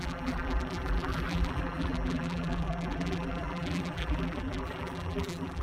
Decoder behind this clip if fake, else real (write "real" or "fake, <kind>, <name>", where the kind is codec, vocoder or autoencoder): fake, vocoder, BigVGAN v2